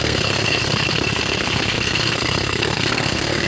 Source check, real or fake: fake